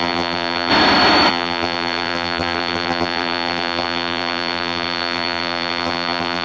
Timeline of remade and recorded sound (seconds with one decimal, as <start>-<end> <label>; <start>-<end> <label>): 0.0-0.7 remade; 0.7-1.3 recorded; 1.3-6.4 remade